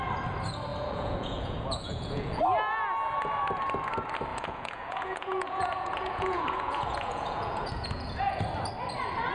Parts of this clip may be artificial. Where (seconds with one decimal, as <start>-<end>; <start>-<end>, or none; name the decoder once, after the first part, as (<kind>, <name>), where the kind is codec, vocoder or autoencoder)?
0.7-2.4 (vocoder, Vocos); 4.3-8.4